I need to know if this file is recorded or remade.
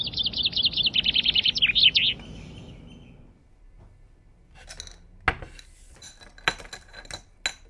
recorded